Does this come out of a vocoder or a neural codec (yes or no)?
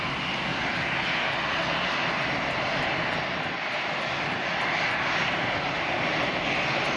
no